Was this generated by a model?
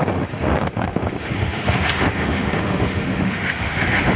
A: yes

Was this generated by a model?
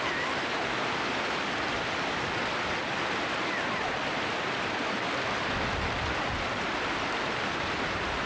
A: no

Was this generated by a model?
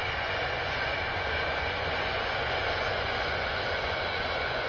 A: yes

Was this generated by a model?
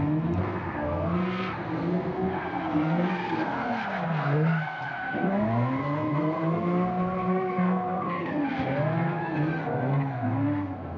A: yes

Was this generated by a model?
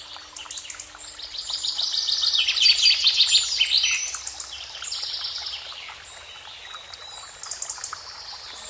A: no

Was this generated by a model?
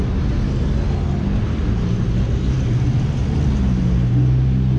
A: no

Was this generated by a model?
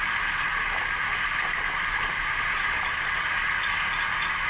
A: no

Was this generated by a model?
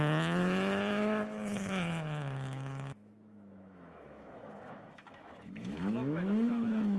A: yes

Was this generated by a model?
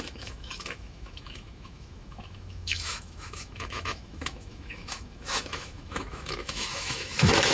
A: yes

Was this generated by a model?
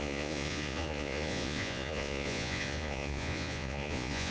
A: yes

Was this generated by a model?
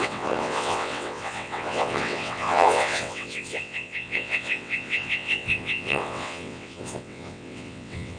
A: yes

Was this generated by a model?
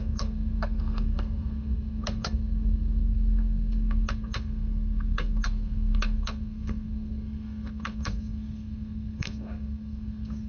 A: yes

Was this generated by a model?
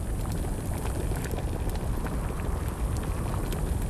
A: no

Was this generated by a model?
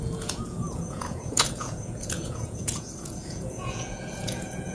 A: yes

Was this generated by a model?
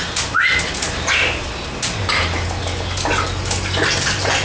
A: no